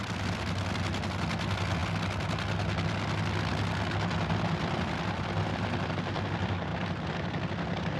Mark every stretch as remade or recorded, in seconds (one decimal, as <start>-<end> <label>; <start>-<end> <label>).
0.0-8.0 recorded